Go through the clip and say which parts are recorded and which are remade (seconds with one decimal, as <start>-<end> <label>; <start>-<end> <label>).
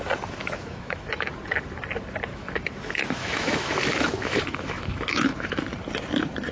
0.0-0.4 recorded; 0.4-1.3 remade; 1.3-2.3 recorded; 2.3-5.6 remade; 5.6-6.5 recorded